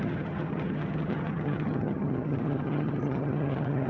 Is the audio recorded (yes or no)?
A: no